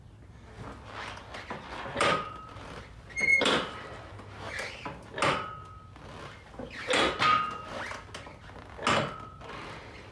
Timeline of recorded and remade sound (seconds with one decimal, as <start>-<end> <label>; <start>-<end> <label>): 0.0-1.9 recorded; 1.9-2.9 remade; 2.9-3.3 recorded; 3.3-4.8 remade; 4.8-10.1 recorded